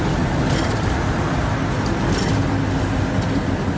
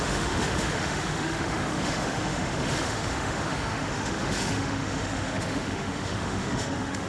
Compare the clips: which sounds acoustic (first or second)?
first